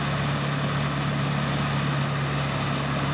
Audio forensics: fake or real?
real